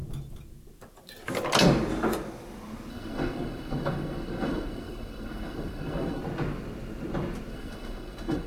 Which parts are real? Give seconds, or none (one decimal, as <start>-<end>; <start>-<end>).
0.0-2.9; 6.2-7.5